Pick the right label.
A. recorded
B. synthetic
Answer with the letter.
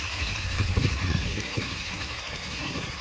B